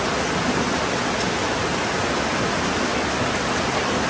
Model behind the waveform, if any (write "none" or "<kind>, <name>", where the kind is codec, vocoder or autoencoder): none